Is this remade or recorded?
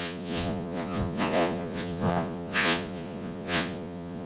remade